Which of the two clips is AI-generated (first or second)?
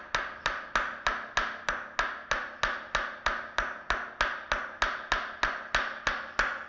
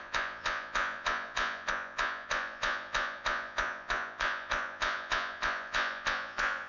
second